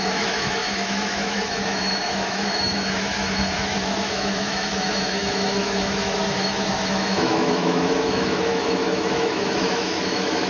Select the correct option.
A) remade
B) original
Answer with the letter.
A